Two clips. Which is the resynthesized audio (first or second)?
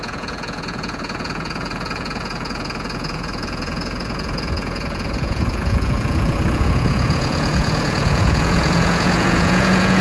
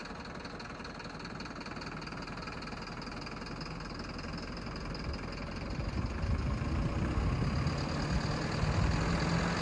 first